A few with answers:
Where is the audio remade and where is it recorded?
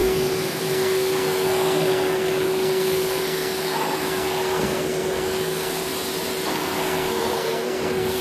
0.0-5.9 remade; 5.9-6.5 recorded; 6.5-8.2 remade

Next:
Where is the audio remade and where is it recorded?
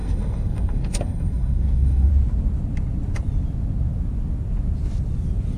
0.0-2.1 remade; 2.1-5.6 recorded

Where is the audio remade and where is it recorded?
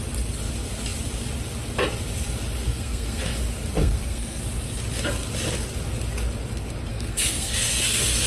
0.0-2.7 recorded; 2.7-3.3 remade; 3.3-3.8 recorded; 3.8-4.4 remade; 4.4-6.9 recorded; 6.9-8.3 remade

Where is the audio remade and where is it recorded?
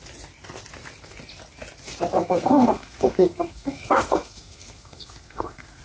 0.0-2.2 recorded; 2.2-5.8 remade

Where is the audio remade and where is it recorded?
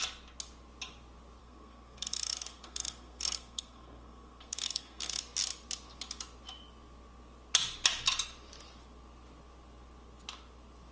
0.0-1.4 recorded; 1.4-5.2 remade; 5.2-10.9 recorded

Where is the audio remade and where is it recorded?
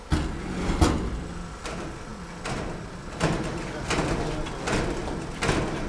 0.0-5.9 recorded